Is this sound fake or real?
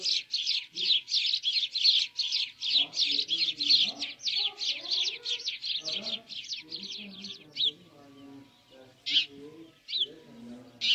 real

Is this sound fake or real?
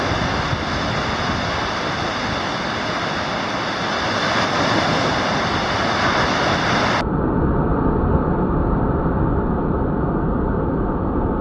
real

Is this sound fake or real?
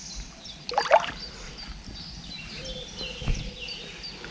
real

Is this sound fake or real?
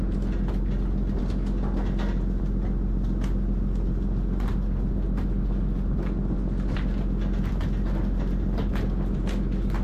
real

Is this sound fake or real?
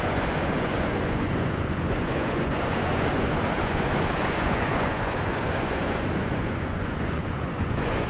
fake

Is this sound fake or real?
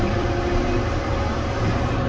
real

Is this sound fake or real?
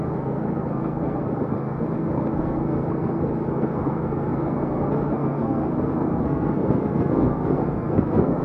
fake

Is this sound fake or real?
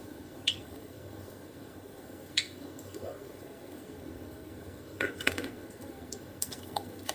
fake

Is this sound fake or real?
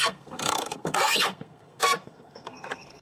fake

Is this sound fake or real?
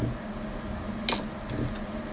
real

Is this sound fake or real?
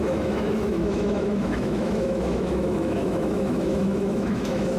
fake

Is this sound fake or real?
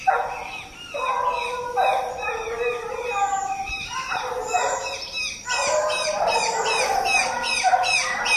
real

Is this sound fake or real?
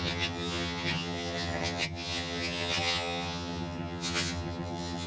fake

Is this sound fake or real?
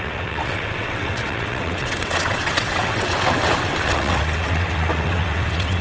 fake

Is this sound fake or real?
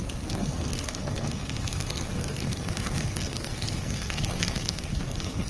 fake